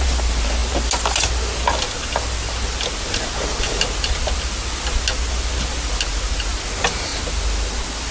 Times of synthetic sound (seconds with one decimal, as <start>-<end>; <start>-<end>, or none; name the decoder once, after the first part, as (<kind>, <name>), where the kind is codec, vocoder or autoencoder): none